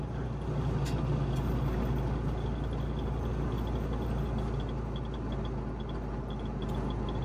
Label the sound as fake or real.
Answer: real